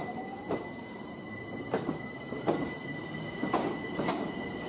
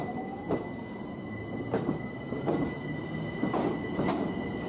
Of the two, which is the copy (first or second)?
first